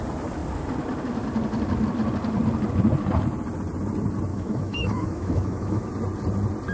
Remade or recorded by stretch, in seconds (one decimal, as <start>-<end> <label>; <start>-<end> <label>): 0.0-4.3 recorded; 4.3-5.9 remade; 5.9-6.7 recorded